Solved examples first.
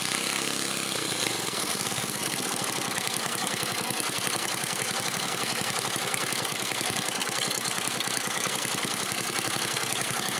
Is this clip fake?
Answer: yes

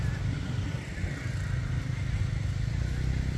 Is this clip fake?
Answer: no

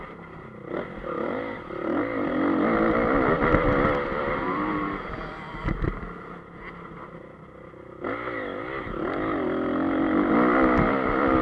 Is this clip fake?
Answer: no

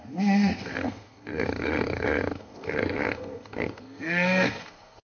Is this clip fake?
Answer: yes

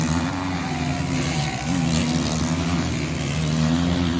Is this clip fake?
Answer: no